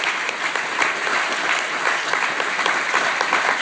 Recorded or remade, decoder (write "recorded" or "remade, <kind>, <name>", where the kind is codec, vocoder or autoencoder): recorded